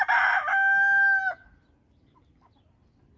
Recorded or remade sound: recorded